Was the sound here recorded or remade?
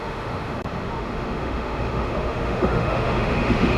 remade